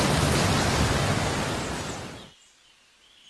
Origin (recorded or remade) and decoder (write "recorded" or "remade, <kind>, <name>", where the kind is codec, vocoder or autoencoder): recorded